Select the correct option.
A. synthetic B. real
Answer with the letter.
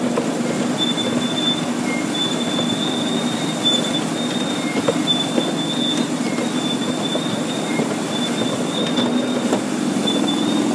B